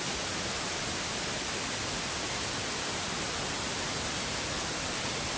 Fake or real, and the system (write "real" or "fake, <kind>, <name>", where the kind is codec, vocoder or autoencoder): fake, vocoder, BigVGAN v2